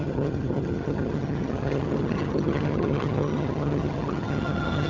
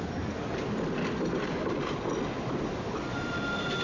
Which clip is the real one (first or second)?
second